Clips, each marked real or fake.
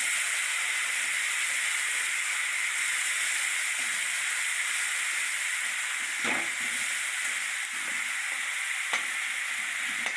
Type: real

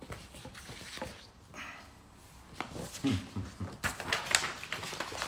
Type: fake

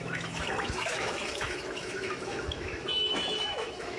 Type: fake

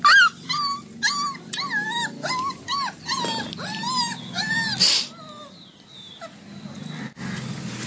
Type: real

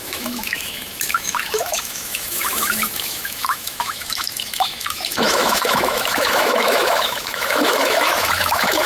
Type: fake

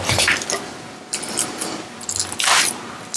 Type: real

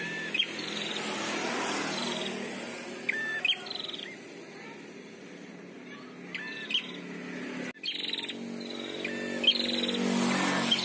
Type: real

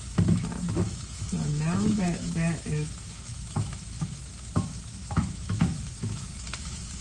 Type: fake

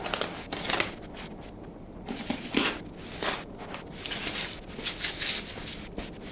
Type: real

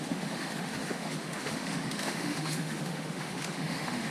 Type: fake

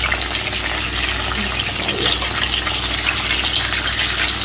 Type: real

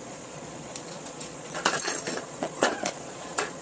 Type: fake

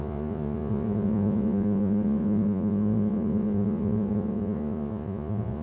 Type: fake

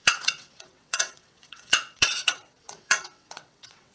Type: fake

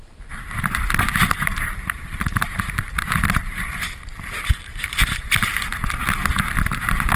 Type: real